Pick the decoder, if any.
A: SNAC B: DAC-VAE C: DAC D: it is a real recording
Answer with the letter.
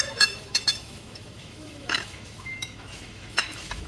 B